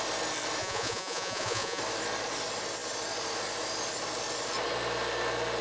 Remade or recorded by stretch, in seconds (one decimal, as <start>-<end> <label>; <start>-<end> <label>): 0.0-0.6 recorded; 0.6-1.8 remade; 1.8-5.6 recorded